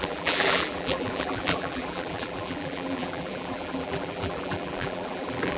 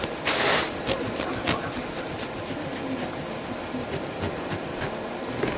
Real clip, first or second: second